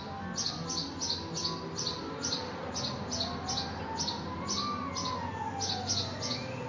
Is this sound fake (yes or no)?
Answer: no